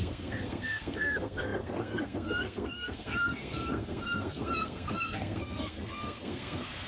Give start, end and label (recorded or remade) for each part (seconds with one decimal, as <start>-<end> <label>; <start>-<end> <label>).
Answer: 0.0-6.9 remade